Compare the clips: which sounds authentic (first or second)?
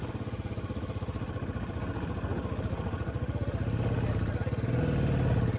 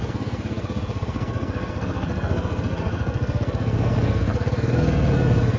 first